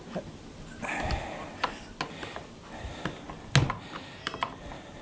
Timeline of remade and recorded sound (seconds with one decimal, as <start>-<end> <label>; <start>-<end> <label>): 0.0-5.0 recorded